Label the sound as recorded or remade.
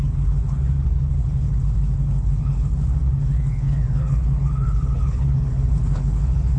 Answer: remade